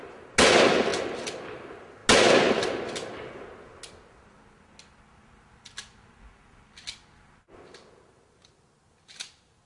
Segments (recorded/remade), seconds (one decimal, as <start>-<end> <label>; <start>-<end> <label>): 0.0-9.7 recorded